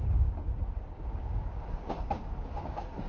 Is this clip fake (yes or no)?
yes